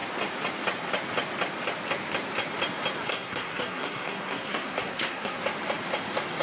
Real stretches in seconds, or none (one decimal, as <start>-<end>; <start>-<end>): 0.0-3.1; 5.4-6.4

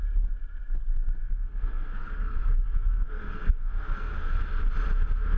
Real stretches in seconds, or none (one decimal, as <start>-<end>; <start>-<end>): 0.0-1.2; 4.4-5.4

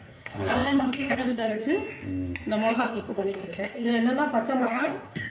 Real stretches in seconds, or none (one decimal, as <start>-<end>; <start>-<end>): 1.6-2.7; 3.9-4.6

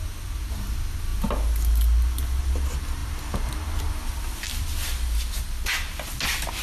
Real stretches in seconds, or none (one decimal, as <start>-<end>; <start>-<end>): 0.0-6.6

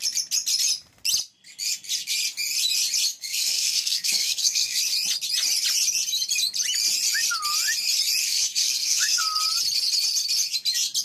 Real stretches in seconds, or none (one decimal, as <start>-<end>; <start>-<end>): 0.0-3.1; 4.8-8.2; 9.2-11.0

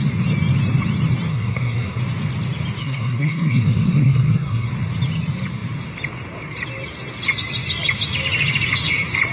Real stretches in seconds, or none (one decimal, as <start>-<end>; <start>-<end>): 0.0-1.3; 2.0-2.8; 4.7-9.3

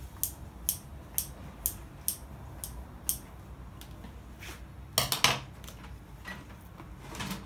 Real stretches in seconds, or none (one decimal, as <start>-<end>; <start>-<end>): 0.0-7.5